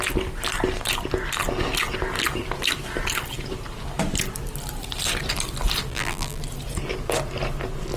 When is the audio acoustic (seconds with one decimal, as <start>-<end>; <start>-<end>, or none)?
0.0-5.9; 6.4-8.0